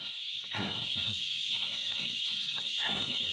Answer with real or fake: fake